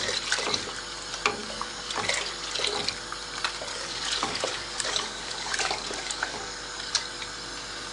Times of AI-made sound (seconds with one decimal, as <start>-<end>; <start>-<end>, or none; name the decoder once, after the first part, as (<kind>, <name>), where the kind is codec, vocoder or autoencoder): 1.4-1.9 (codec, DAC); 3.7-6.9